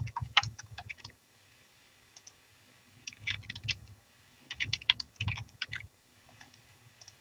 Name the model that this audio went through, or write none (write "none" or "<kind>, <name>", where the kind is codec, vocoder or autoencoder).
codec, DAC